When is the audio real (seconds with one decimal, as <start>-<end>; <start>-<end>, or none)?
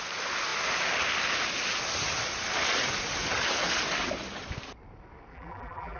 0.0-5.3